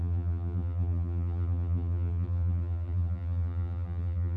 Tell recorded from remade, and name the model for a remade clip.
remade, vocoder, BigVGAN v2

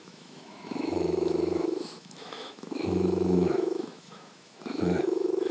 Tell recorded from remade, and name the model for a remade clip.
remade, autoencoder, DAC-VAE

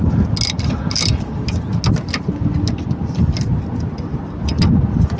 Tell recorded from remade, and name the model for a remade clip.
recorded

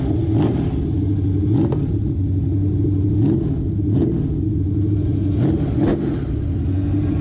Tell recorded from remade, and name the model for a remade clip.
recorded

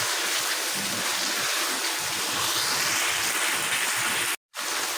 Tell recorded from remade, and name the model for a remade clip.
recorded